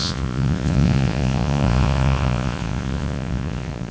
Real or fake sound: fake